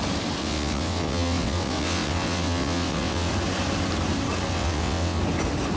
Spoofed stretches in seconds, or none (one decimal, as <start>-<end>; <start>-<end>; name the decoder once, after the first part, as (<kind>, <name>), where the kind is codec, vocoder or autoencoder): 0.4-3.3 (vocoder, WaveNeXt); 4.5-5.2